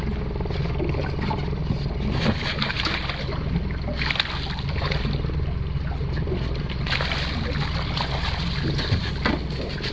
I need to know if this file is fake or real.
real